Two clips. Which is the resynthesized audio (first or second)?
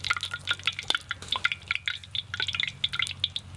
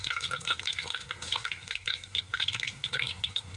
second